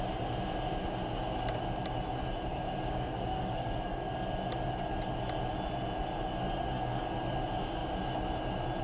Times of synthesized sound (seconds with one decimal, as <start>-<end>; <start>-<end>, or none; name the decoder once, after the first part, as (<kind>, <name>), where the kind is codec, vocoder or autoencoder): 2.5-4.1 (codec, DAC)